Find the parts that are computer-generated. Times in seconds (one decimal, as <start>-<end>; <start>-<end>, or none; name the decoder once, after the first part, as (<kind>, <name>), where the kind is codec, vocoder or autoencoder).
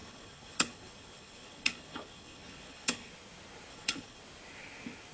0.0-3.1 (codec, HILCodec); 3.7-4.2